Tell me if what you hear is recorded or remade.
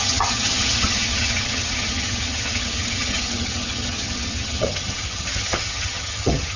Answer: remade